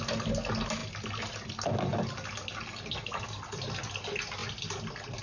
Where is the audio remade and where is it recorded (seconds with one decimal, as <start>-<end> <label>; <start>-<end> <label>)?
0.0-5.2 recorded